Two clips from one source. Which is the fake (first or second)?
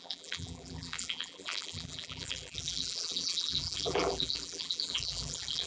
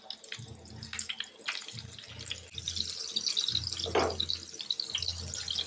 first